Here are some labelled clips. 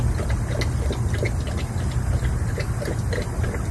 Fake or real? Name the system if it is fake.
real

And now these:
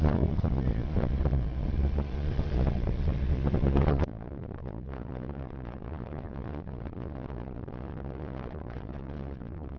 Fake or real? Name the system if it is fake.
fake, vocoder, Vocos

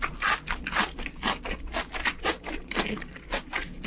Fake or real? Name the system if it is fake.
real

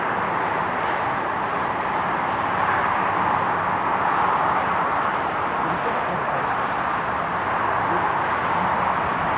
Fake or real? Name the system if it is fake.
real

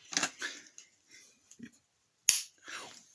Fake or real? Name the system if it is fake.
real